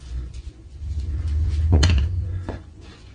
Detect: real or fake fake